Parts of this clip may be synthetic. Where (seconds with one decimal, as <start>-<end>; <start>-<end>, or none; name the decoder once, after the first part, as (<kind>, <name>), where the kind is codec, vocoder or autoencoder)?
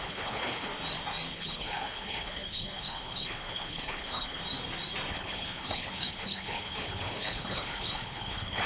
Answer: 0.0-0.7 (codec, HILCodec); 1.3-4.4; 5.1-8.7